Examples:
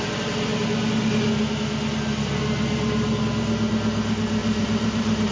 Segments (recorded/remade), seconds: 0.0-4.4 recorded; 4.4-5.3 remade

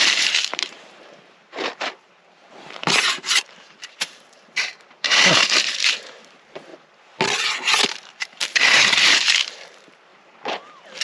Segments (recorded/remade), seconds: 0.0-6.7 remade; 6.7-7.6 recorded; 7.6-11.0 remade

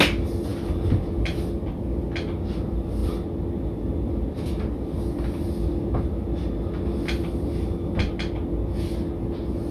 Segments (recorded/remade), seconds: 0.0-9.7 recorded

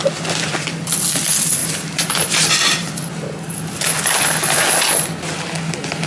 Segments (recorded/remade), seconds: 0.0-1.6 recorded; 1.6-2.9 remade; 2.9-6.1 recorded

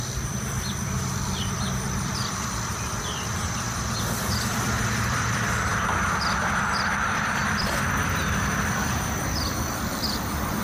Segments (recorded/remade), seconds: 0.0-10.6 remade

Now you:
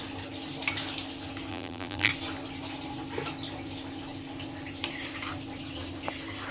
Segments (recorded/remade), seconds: 0.0-1.5 recorded; 1.5-2.1 remade; 2.1-6.5 recorded

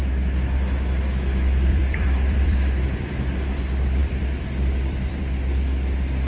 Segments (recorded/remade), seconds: 0.0-1.7 recorded; 1.7-3.2 remade; 3.2-4.0 recorded; 4.0-5.2 remade; 5.2-6.3 recorded